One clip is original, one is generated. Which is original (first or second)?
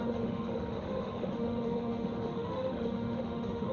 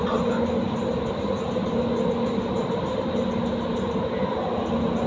second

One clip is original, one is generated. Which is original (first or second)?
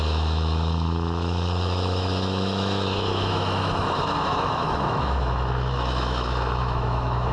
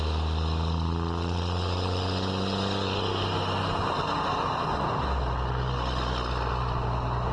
second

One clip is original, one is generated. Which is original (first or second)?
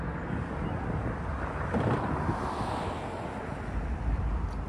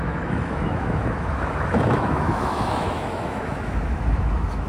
first